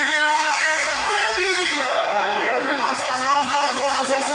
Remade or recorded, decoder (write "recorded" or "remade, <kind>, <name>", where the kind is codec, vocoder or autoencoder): remade, codec, SNAC